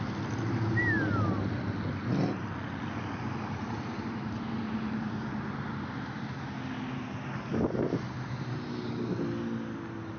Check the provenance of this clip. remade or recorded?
recorded